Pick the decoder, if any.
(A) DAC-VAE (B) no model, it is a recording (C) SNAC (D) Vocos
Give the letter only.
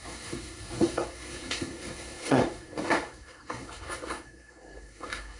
C